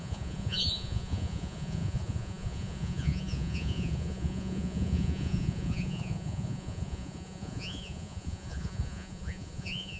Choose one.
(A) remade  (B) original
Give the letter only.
A